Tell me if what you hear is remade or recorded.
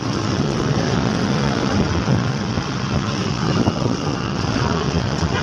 remade